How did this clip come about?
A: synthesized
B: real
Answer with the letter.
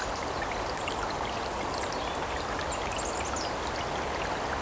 B